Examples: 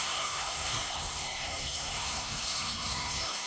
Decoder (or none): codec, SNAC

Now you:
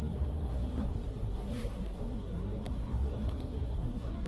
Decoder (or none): codec, SNAC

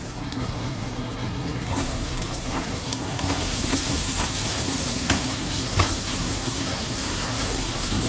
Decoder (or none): codec, SNAC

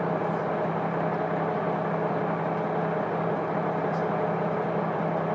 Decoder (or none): none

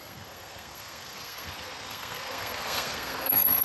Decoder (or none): codec, SNAC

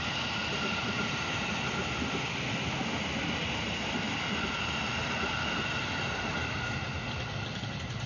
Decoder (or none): none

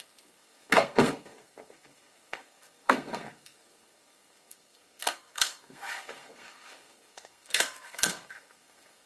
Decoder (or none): codec, SNAC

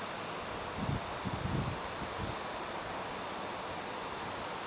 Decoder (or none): none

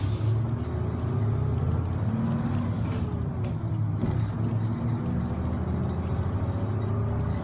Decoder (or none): none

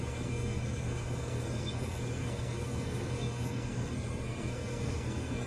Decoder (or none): codec, SNAC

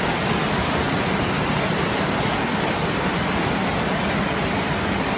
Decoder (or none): none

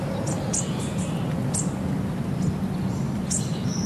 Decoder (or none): none